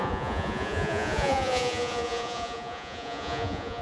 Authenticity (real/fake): fake